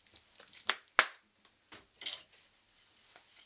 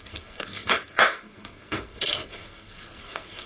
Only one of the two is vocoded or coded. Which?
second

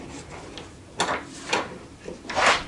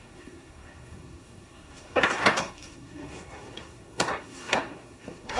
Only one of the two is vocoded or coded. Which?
second